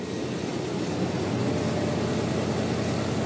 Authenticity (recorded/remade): recorded